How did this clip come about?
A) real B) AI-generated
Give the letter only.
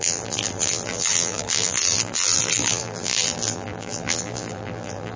B